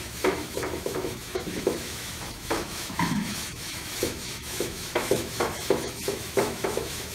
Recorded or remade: remade